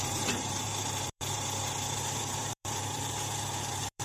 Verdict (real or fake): fake